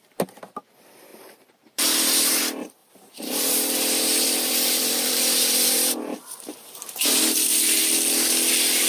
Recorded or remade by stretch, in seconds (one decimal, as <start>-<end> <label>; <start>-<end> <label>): 0.0-1.1 recorded; 1.1-2.4 remade; 2.4-2.8 recorded; 2.8-7.2 remade; 7.2-8.9 recorded